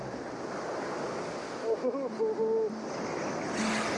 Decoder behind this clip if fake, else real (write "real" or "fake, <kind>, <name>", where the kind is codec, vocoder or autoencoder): real